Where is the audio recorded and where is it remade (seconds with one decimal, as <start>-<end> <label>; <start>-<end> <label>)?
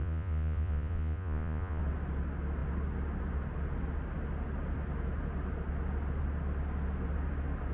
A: 0.0-1.8 remade; 1.8-7.7 recorded